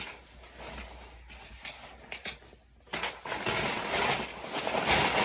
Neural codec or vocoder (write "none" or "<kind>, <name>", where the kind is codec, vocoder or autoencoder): none